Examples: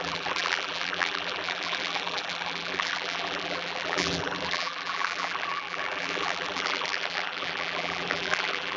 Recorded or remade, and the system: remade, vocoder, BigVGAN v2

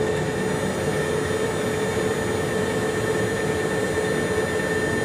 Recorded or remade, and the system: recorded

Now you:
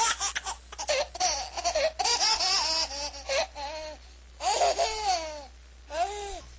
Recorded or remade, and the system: recorded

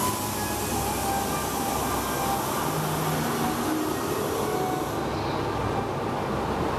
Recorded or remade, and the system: recorded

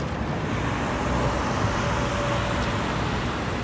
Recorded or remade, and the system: recorded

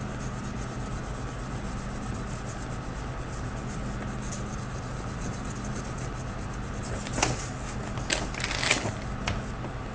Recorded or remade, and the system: recorded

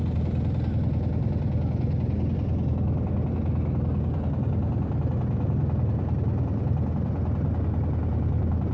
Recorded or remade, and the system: recorded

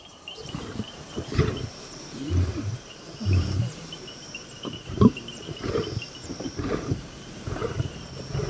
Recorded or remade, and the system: remade, vocoder, BigVGAN v2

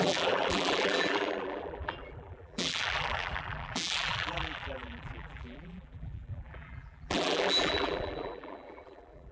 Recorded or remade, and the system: remade, vocoder, BigVGAN v2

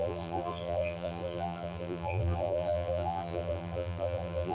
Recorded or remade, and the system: remade, vocoder, BigVGAN v2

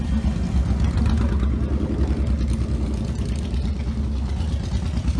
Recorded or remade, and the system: recorded